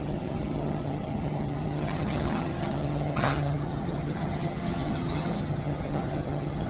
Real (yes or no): no